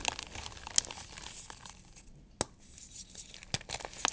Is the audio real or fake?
real